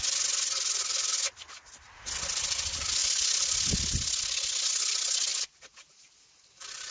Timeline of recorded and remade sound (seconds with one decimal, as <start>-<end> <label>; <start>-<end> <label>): 0.0-6.9 recorded